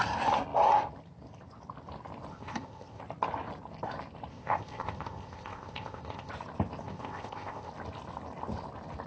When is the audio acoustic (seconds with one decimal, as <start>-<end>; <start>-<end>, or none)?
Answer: 0.0-2.3; 3.0-4.3; 6.3-6.8; 7.7-9.1